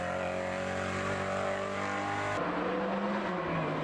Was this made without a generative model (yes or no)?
yes